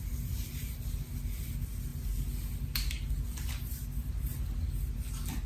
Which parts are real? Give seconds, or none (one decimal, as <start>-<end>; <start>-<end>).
0.0-5.5